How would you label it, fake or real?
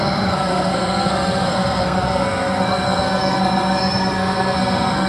fake